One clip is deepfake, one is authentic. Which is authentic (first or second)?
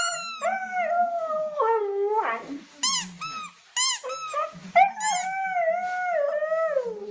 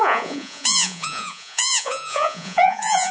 first